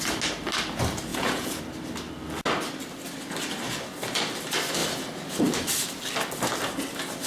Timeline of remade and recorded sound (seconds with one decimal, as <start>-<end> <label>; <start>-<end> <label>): 0.0-1.1 recorded; 1.1-1.6 remade; 1.6-7.3 recorded